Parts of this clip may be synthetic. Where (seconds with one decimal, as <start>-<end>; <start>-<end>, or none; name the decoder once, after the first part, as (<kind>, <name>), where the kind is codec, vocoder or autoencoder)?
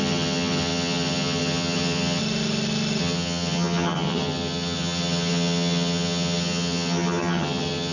0.0-2.2 (vocoder, HiFi-GAN); 3.0-7.9